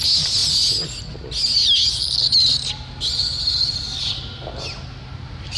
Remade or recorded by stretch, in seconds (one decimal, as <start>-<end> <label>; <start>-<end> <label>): 0.0-5.6 recorded